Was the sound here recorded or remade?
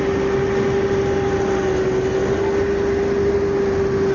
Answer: recorded